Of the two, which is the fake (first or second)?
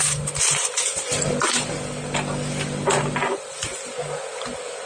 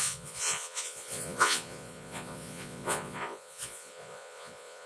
second